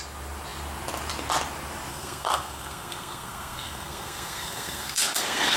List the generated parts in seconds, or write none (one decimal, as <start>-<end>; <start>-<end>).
1.9-5.6